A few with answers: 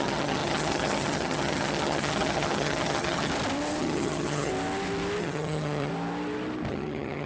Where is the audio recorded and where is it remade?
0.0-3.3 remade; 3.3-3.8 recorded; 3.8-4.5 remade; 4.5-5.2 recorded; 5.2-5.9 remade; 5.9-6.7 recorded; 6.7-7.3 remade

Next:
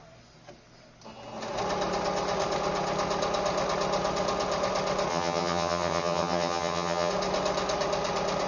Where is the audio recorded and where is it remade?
0.0-5.1 recorded; 5.1-7.1 remade; 7.1-8.5 recorded

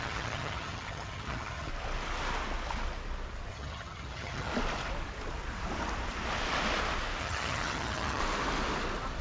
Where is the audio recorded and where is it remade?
0.0-1.7 remade; 1.7-3.5 recorded; 3.5-4.5 remade; 4.5-7.2 recorded; 7.2-8.2 remade; 8.2-9.2 recorded